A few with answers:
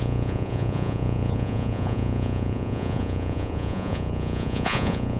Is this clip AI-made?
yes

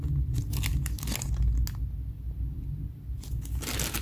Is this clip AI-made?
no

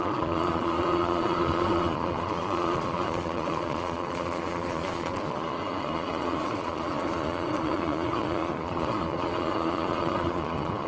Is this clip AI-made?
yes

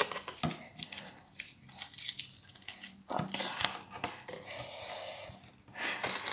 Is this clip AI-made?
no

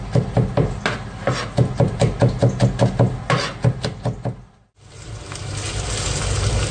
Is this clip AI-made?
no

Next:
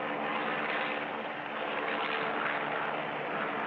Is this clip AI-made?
no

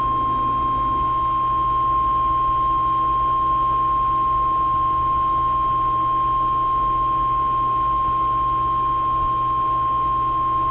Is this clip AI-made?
no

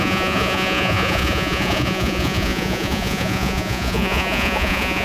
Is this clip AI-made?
yes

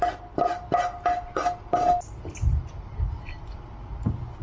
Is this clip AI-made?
no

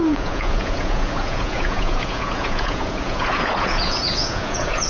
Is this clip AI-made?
yes